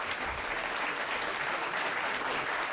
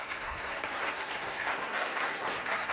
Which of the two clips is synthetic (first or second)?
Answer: second